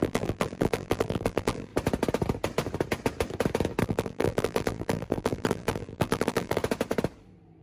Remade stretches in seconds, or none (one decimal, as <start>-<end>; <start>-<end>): 0.0-1.7; 3.8-6.6